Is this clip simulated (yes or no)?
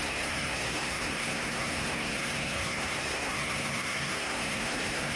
yes